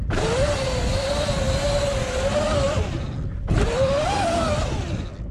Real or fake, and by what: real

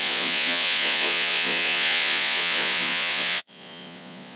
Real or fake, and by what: fake, vocoder, Vocos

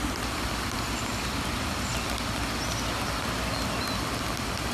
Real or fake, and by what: real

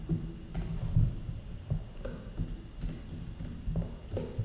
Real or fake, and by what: fake, vocoder, BigVGAN v2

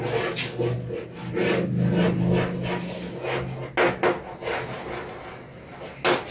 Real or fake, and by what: real